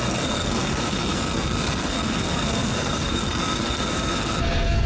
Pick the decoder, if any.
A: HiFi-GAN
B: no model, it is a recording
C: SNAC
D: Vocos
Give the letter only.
C